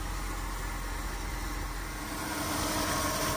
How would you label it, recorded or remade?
recorded